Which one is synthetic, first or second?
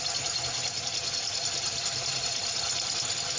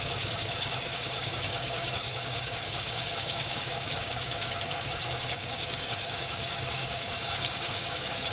second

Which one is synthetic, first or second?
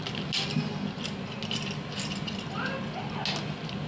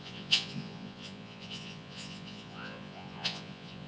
second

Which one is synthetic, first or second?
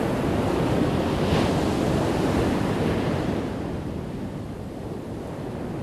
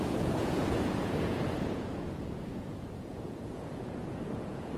second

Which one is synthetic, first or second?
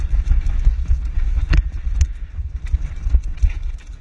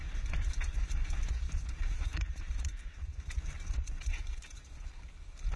second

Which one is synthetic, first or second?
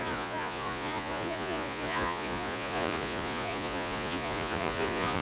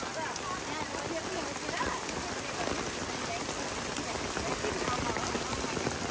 first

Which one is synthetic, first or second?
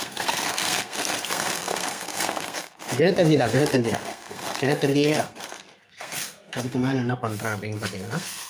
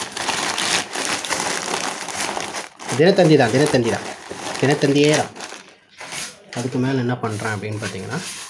first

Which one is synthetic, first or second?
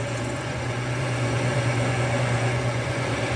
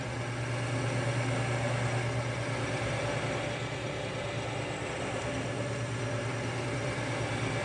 first